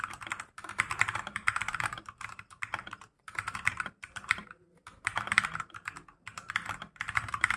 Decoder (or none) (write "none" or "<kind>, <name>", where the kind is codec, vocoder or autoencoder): vocoder, BigVGAN v2